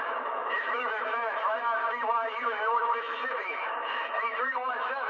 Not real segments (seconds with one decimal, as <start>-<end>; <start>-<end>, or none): 0.0-5.1